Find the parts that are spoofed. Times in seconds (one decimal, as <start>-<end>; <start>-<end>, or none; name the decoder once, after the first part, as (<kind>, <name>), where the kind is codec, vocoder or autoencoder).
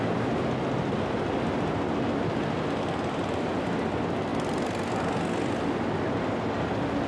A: none